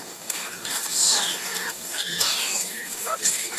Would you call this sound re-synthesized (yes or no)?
yes